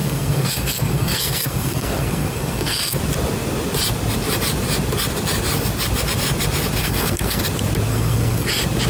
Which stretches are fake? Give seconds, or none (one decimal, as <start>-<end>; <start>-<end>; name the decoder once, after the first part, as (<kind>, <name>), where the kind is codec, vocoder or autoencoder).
0.0-3.0 (codec, SNAC); 6.8-7.4; 7.9-8.5

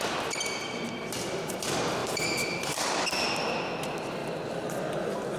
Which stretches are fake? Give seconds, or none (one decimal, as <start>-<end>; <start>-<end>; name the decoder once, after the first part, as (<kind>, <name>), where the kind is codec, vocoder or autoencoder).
2.0-3.3 (vocoder, BigVGAN v2); 4.2-4.8

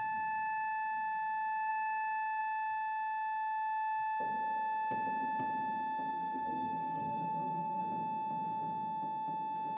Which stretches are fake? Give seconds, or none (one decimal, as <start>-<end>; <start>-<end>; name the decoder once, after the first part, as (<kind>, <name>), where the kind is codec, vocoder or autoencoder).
6.1-7.8 (codec, SNAC)

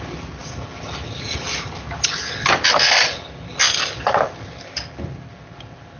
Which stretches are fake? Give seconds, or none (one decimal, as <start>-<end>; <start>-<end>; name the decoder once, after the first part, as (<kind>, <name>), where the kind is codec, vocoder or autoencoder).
none

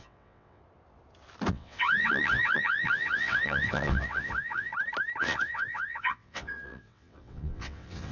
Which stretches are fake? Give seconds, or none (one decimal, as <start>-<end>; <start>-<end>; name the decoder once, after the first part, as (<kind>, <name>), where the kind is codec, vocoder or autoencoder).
0.0-0.6 (vocoder, WaveNeXt); 1.5-4.7; 5.2-8.1

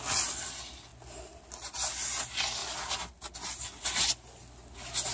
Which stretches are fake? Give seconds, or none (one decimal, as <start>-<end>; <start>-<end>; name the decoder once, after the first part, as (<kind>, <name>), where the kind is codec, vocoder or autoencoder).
none

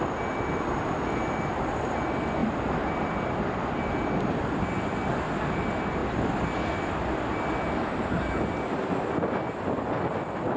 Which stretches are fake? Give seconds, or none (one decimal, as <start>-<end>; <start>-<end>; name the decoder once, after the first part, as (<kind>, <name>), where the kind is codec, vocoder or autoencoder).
2.4-3.9 (vocoder, BigVGAN v2)